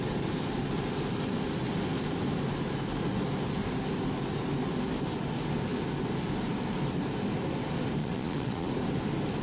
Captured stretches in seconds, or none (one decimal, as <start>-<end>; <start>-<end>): 0.0-8.0; 8.7-9.4